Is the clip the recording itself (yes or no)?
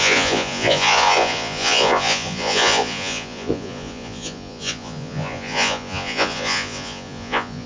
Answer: no